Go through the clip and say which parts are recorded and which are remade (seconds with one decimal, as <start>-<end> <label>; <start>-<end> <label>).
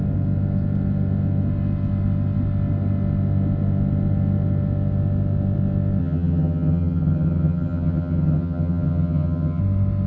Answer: 0.0-6.0 recorded; 6.0-9.6 remade; 9.6-10.1 recorded